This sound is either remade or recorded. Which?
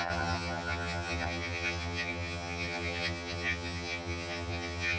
remade